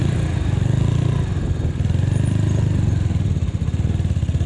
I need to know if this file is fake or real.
real